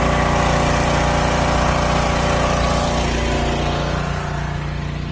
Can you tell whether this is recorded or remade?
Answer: recorded